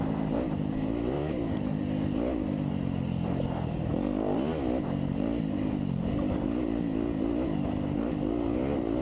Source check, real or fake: real